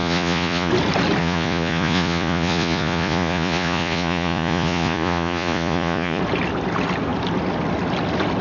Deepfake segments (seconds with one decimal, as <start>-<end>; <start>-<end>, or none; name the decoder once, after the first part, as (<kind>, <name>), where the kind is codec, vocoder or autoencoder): 0.0-0.7 (vocoder, Vocos); 1.2-6.2